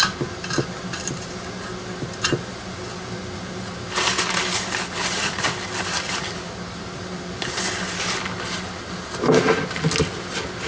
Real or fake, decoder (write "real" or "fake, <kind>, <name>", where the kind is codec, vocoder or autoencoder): real